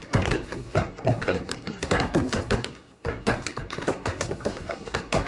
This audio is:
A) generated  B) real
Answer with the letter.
A